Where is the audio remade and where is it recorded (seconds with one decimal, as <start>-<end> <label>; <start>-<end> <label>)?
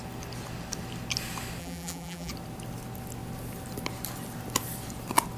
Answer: 0.0-1.6 recorded; 1.6-2.3 remade; 2.3-5.4 recorded